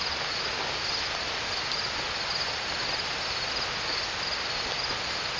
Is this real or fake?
real